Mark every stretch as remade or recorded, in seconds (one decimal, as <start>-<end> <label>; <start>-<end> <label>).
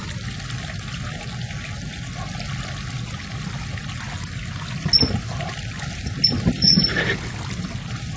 0.0-8.2 recorded